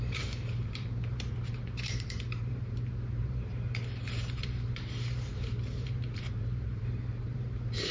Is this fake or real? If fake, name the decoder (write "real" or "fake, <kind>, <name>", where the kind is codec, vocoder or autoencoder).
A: fake, vocoder, BigVGAN v2